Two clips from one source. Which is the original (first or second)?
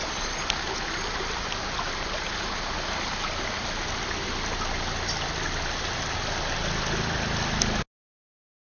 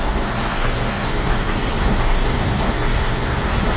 first